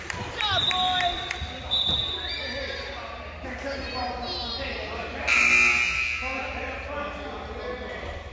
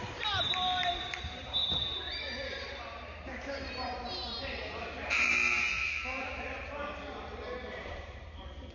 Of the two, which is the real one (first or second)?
first